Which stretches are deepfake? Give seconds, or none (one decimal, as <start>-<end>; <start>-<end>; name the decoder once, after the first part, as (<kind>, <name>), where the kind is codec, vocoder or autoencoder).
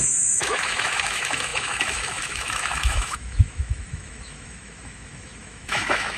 0.0-6.2 (autoencoder, DAC-VAE)